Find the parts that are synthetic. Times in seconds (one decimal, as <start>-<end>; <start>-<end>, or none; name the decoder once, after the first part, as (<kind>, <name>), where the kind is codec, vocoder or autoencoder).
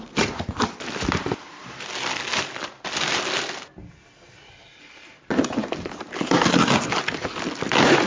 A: none